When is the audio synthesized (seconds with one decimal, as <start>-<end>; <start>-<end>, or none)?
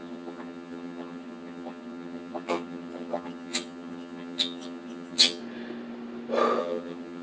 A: 0.0-5.4; 6.6-7.2